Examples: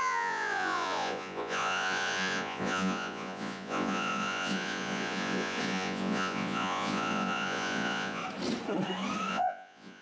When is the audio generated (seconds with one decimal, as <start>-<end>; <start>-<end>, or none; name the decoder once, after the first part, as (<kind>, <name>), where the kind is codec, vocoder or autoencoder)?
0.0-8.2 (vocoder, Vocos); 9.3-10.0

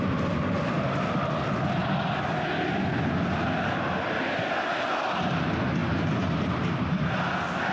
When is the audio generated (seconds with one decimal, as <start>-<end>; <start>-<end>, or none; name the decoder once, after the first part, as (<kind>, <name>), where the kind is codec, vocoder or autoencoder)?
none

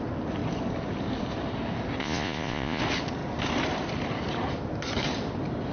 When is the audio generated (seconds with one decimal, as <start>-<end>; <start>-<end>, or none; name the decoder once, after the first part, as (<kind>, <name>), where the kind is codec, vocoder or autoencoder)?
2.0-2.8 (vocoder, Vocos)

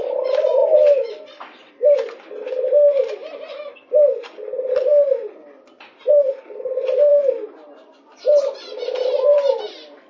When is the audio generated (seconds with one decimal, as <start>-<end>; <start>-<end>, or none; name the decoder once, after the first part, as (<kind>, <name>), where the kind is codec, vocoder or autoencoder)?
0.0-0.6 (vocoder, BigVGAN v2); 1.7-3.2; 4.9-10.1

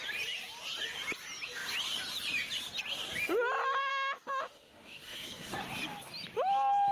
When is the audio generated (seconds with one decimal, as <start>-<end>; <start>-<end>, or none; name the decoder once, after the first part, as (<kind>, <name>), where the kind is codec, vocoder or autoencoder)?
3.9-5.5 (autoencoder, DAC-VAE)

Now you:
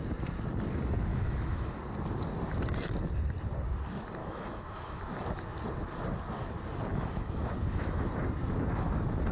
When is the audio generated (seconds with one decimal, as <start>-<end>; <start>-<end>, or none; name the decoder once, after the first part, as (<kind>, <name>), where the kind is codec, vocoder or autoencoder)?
1.1-1.8 (autoencoder, DAC-VAE); 4.2-5.0; 6.9-8.1

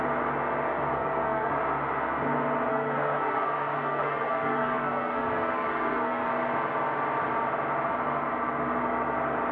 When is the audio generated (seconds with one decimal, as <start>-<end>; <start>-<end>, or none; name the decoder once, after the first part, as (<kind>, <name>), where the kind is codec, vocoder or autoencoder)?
0.9-1.5 (codec, SNAC); 2.7-6.3

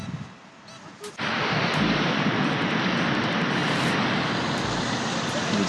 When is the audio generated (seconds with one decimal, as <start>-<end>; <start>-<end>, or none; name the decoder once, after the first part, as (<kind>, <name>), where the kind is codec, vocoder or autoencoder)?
none